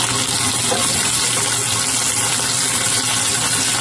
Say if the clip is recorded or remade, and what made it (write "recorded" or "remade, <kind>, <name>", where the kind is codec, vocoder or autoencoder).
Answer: recorded